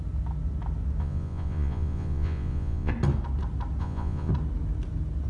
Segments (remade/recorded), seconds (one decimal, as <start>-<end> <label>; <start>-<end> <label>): 0.0-1.0 recorded; 1.0-2.9 remade; 2.9-3.8 recorded; 3.8-4.3 remade; 4.3-5.3 recorded